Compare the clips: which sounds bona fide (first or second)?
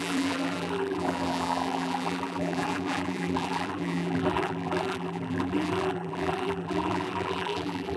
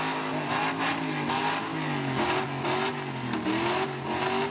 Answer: second